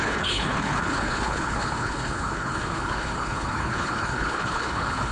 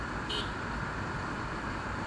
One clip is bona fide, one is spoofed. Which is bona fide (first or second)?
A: second